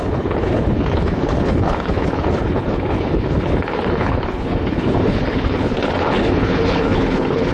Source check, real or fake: fake